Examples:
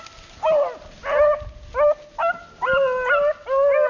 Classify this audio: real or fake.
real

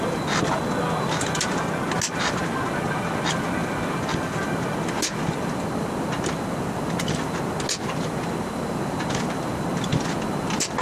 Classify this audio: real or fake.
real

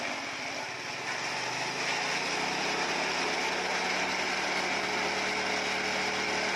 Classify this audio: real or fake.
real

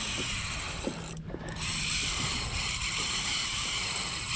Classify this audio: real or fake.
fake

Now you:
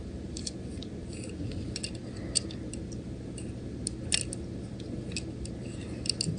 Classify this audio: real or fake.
real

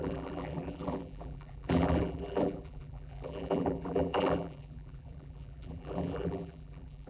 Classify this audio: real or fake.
fake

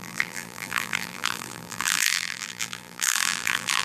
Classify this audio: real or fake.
fake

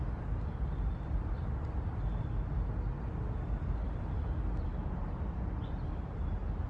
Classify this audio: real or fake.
real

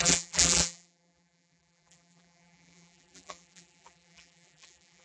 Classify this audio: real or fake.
fake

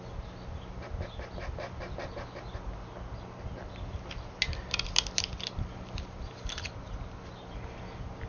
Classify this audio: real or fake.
real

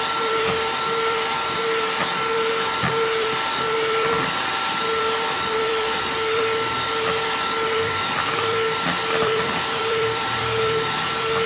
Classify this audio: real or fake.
fake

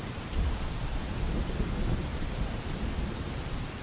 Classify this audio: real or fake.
fake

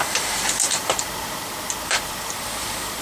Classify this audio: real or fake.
fake